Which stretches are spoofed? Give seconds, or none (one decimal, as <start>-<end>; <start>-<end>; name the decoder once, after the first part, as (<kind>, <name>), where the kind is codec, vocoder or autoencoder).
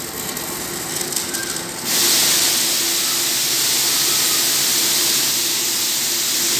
none